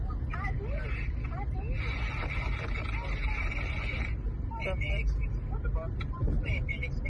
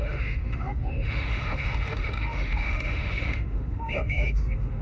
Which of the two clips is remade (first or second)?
second